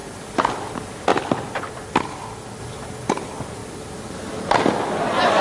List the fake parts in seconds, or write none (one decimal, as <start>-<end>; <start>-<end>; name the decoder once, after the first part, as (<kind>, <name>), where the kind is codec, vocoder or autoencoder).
none